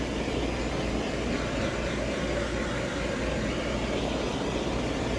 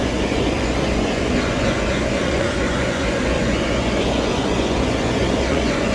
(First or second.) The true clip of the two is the first